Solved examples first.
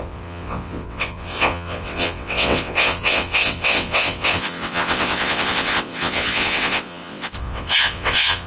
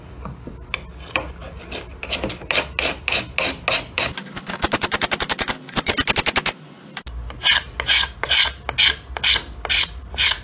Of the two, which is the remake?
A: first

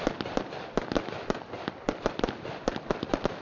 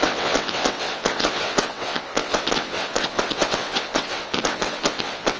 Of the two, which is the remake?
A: second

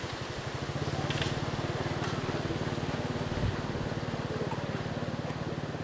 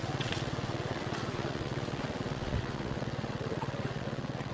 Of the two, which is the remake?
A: second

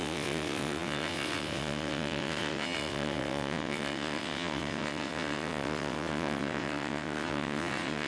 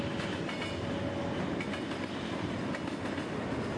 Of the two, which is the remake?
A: first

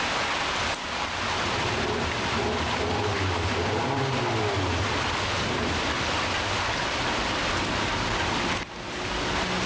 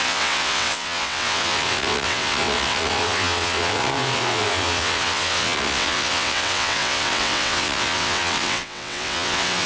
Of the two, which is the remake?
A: second